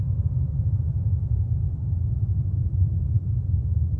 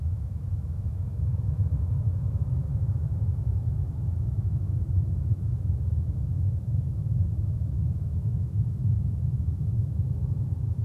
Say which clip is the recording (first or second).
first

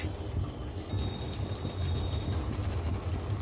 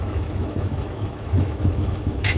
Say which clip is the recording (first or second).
first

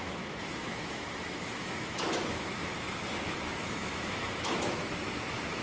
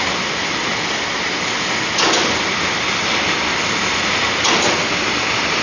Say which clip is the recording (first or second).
second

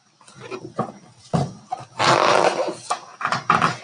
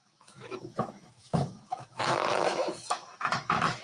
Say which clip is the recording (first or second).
first